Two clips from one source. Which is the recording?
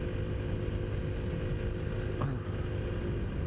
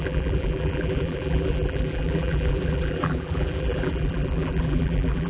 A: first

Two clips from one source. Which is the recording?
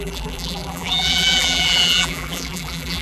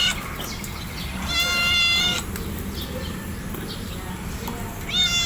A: second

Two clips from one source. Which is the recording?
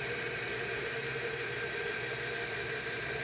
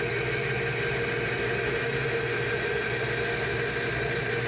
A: second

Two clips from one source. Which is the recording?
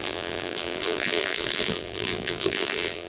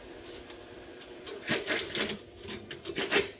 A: second